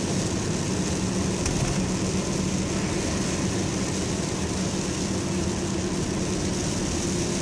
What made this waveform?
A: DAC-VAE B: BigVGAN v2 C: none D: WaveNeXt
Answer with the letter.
C